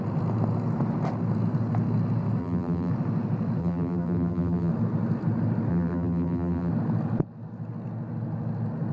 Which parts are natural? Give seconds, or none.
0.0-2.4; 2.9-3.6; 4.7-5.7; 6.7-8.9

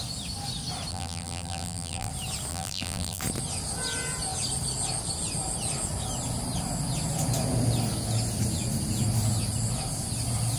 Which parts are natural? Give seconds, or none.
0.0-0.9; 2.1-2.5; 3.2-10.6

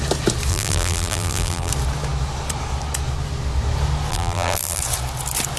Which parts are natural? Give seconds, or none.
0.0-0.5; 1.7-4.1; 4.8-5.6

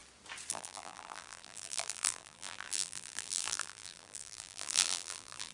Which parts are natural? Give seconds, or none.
0.0-0.5